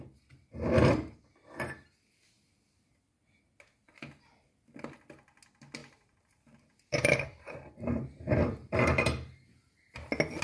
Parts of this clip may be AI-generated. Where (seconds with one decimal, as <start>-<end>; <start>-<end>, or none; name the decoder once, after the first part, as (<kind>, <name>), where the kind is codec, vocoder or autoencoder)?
5.8-9.9 (vocoder, BigVGAN v2)